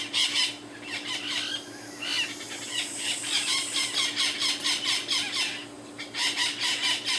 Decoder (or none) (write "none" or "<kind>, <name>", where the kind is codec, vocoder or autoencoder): none